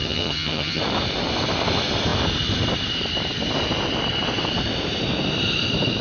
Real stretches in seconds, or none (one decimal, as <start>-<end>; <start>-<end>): 0.8-6.0